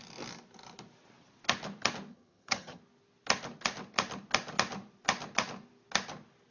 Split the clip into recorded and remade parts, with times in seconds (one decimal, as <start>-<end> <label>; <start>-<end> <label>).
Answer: 0.0-2.1 recorded; 2.1-2.8 remade; 2.8-6.5 recorded